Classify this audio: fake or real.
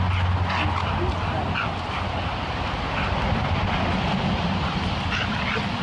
real